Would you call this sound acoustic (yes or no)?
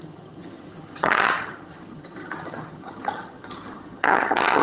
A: no